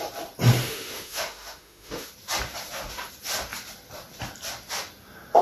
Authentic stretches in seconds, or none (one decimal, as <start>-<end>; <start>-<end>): 0.0-0.6; 2.1-5.4